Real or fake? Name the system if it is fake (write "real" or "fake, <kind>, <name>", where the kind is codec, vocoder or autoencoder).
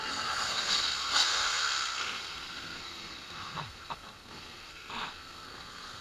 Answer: fake, codec, SNAC